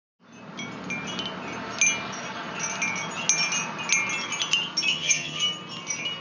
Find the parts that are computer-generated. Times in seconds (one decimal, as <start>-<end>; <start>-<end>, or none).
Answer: 4.9-5.4